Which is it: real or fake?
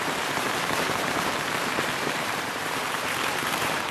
fake